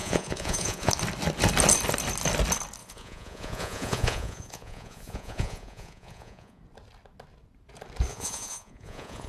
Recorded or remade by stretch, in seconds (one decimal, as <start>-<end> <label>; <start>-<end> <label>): 0.0-0.9 remade; 0.9-2.8 recorded; 2.8-6.6 remade; 6.6-8.1 recorded; 8.1-9.3 remade

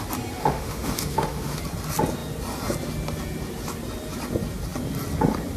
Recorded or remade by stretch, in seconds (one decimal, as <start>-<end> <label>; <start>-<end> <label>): 0.0-0.4 recorded; 0.4-1.6 remade; 1.6-5.6 recorded

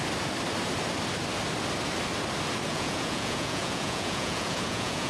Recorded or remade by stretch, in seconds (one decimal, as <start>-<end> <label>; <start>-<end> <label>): 0.0-2.7 recorded; 2.7-5.1 remade

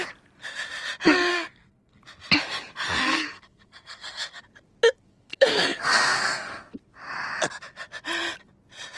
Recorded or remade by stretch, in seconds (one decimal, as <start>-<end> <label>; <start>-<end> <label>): 0.0-1.3 recorded; 1.3-2.0 remade; 2.0-3.1 recorded; 3.1-4.4 remade; 4.4-5.1 recorded; 5.1-6.6 remade; 6.6-9.0 recorded